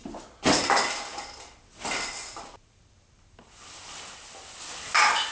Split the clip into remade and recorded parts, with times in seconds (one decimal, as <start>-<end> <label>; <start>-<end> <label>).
0.0-1.1 recorded; 1.1-4.3 remade; 4.3-5.3 recorded